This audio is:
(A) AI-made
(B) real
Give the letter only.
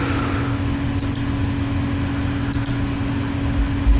B